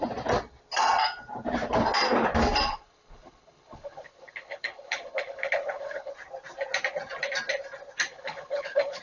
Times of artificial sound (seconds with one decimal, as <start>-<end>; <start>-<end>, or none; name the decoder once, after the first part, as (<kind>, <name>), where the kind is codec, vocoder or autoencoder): 2.7-6.1 (codec, HILCodec); 8.1-9.0